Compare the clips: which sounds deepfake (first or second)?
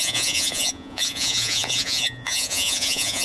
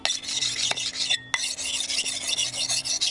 first